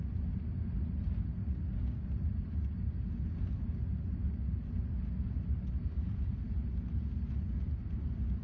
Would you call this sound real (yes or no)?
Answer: yes